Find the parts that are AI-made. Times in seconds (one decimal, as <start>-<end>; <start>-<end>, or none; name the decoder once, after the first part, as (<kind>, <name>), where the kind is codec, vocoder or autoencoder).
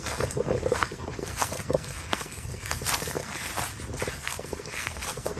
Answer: 0.0-3.5 (codec, SNAC); 4.1-5.4